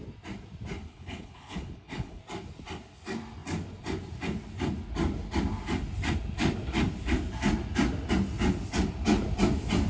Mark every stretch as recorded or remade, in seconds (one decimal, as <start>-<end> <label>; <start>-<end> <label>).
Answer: 0.0-0.8 recorded; 0.8-2.2 remade; 2.2-9.9 recorded